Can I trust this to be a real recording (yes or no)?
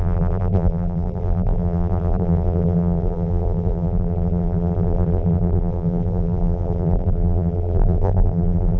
no